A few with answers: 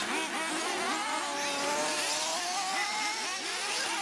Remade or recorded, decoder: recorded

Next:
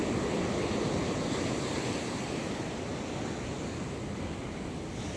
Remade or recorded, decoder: recorded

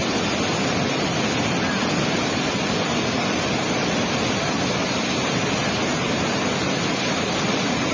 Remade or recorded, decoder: recorded